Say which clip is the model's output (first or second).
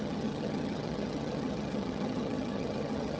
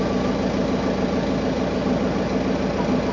first